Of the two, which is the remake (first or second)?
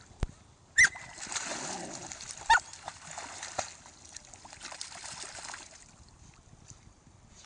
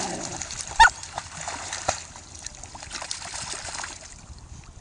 second